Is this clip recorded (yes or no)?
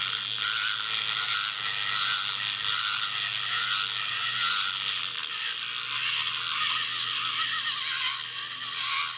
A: yes